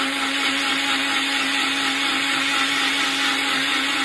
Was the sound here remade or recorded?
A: recorded